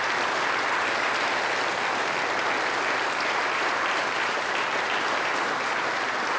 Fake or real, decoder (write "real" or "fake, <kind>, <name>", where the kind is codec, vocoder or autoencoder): real